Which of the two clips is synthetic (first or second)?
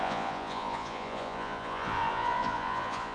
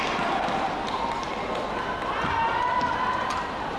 first